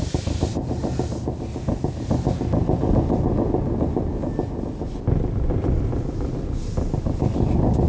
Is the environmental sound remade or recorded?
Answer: recorded